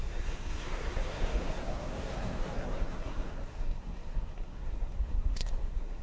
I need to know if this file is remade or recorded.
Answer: remade